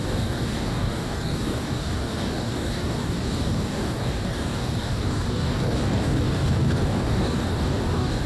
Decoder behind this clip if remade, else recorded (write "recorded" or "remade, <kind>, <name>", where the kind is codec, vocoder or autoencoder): remade, codec, DAC